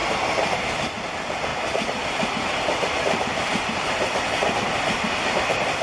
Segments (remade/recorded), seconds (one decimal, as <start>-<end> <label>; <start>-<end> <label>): 0.0-1.5 remade; 1.5-3.0 recorded; 3.0-3.5 remade; 3.5-4.4 recorded; 4.4-5.8 remade